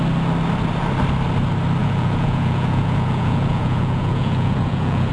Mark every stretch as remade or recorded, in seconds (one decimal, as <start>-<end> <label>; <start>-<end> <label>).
0.0-1.8 recorded; 1.8-5.1 remade